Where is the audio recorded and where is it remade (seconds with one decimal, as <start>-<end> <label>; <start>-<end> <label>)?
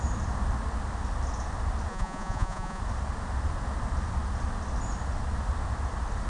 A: 0.0-1.9 recorded; 1.9-2.8 remade; 2.8-6.3 recorded